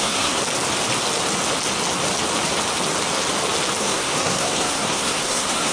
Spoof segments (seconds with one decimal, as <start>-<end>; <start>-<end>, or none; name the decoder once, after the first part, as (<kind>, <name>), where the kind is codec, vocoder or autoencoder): 0.0-0.4 (codec, SNAC); 3.8-5.7